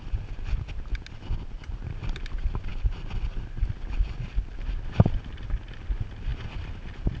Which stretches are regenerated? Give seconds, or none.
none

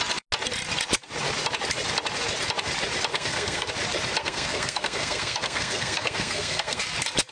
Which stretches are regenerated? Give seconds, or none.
3.1-3.7 (codec, SNAC); 4.2-6.8

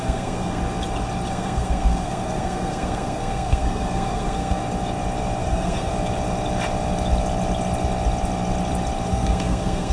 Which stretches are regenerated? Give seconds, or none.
0.0-0.6 (codec, SNAC); 1.3-4.6; 5.4-5.9; 9.1-9.9

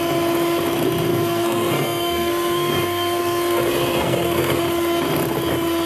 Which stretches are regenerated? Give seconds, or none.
1.1-4.6 (codec, SNAC)